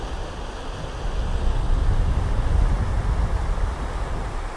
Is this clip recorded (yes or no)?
yes